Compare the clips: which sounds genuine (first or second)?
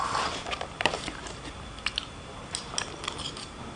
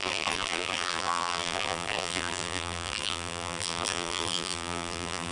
first